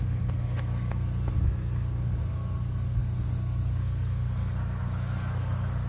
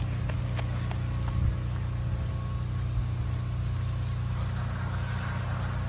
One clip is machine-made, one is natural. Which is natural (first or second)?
second